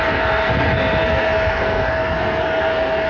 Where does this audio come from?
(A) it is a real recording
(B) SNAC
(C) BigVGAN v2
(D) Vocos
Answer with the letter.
B